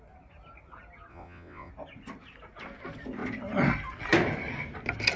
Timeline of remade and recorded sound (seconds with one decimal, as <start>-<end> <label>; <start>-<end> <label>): 0.0-1.1 recorded; 1.1-1.7 remade; 1.7-5.2 recorded